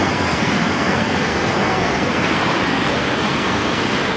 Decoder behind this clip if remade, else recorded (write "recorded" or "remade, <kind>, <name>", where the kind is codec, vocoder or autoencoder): remade, codec, SNAC